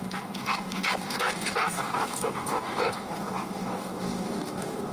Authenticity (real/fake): fake